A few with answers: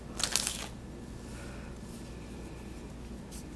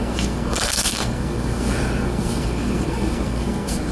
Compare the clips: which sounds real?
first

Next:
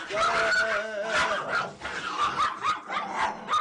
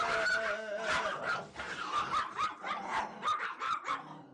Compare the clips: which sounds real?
first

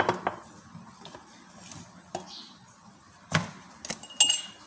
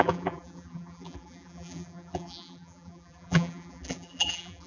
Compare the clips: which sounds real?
first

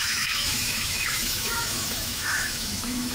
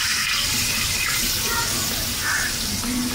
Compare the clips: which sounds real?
second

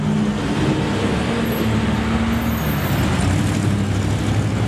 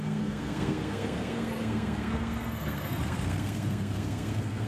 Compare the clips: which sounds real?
first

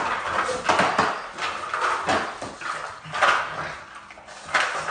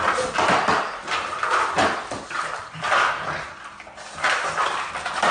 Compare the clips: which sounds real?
first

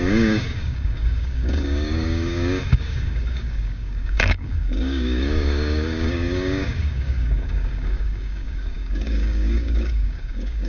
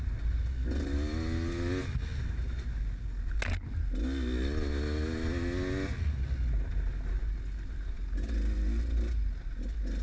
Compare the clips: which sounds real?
second